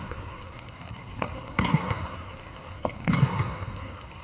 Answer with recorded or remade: remade